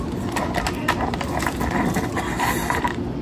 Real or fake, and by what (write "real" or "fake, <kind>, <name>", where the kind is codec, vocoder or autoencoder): real